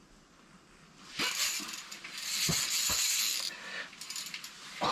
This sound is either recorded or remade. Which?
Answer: recorded